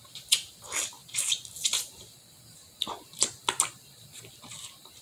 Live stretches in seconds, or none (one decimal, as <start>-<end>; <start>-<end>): 0.0-5.0